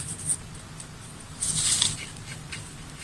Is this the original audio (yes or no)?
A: yes